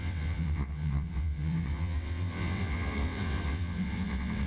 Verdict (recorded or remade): remade